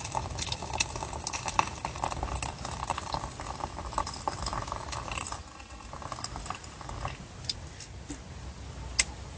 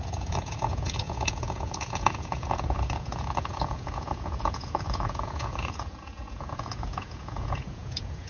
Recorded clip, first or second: first